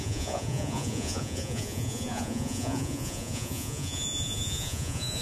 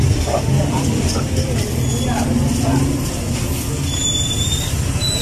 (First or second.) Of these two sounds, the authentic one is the second